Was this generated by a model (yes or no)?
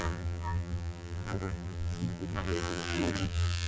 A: yes